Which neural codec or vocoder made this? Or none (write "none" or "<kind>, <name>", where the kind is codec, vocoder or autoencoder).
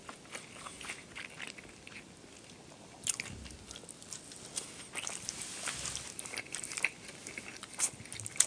none